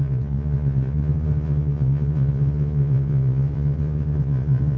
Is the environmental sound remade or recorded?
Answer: remade